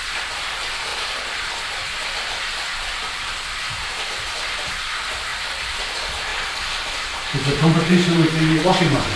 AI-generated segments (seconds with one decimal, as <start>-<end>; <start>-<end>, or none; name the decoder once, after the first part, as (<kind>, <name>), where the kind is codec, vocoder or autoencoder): 0.0-9.2 (vocoder, BigVGAN v2)